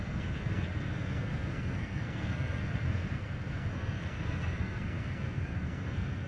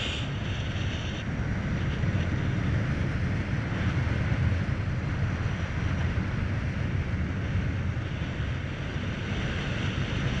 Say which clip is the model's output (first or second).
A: first